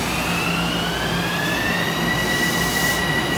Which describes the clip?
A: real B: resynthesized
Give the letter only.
A